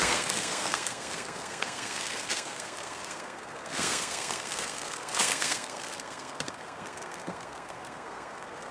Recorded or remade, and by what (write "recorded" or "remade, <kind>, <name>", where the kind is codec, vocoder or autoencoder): remade, codec, SNAC